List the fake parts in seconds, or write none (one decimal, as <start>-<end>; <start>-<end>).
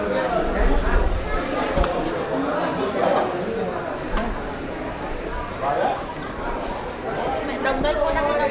none